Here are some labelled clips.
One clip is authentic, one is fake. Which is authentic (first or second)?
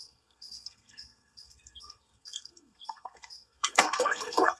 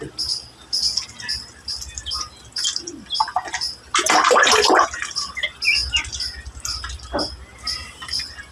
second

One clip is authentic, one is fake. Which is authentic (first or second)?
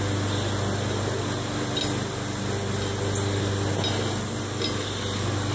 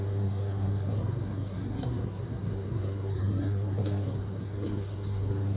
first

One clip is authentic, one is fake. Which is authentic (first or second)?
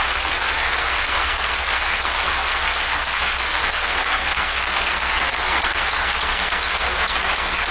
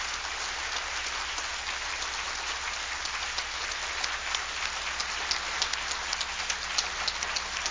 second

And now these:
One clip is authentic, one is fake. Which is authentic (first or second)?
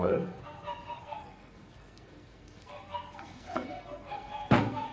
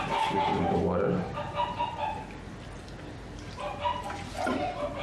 second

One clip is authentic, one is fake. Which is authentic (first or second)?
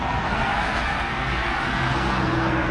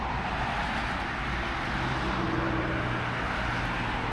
second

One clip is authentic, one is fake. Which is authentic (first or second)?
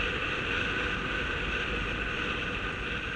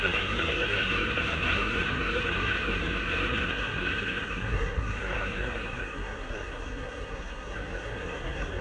first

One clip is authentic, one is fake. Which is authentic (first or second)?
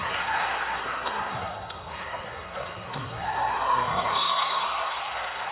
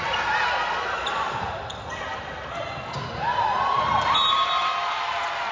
second